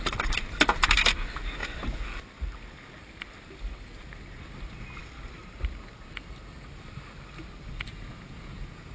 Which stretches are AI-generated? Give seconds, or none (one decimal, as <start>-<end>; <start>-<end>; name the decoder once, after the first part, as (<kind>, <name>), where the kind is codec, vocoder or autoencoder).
7.9-8.9 (vocoder, Vocos)